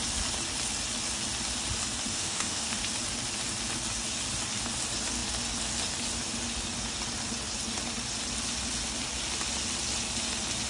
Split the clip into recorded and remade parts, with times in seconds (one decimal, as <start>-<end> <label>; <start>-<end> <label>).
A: 0.0-2.1 recorded; 2.1-2.8 remade; 2.8-10.7 recorded